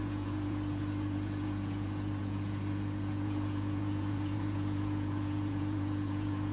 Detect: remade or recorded remade